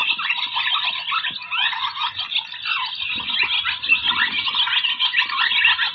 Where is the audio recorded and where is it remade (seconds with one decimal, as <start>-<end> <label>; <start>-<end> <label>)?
0.0-5.9 recorded

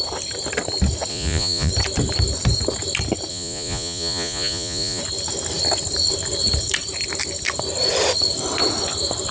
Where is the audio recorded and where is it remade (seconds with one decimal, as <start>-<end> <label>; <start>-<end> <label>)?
0.0-1.1 recorded; 1.1-1.7 remade; 1.7-3.3 recorded; 3.3-5.0 remade; 5.0-9.3 recorded

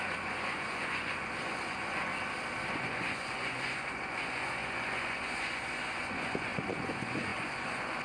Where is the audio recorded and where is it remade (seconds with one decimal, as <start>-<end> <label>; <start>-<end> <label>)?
0.0-2.1 remade; 2.1-2.7 recorded; 2.7-8.0 remade

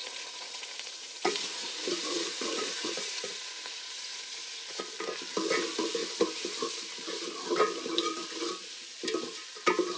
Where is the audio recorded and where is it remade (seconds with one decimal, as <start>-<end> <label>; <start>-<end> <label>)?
0.0-4.8 remade; 4.8-10.0 recorded